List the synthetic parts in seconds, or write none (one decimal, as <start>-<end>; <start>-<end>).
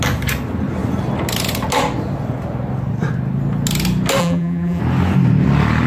4.2-4.8